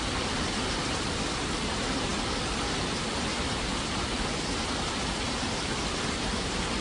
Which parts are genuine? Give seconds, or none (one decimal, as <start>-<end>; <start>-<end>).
0.0-6.8